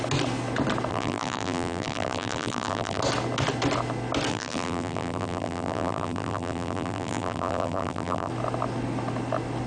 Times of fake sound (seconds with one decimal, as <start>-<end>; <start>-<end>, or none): 0.9-3.0; 4.3-8.3